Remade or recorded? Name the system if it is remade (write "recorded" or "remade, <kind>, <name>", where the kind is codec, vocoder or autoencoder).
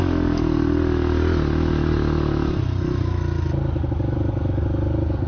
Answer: recorded